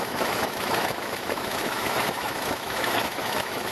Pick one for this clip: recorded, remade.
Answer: remade